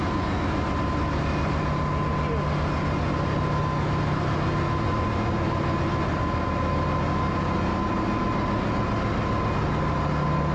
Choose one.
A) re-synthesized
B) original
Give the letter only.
B